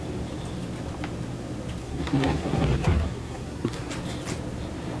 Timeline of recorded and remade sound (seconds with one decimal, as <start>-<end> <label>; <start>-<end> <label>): 0.0-1.8 recorded; 1.8-3.9 remade; 3.9-5.0 recorded